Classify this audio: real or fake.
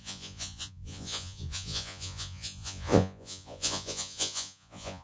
fake